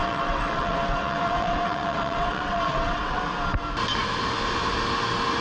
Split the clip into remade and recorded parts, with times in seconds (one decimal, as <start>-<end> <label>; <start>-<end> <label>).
0.0-3.2 remade; 3.2-5.4 recorded